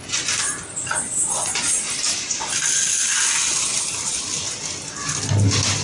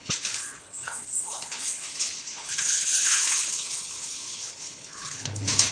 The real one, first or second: first